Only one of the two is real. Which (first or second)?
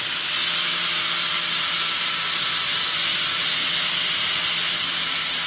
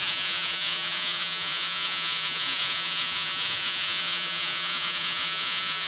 first